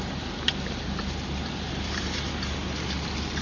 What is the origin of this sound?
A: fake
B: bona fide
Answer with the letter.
A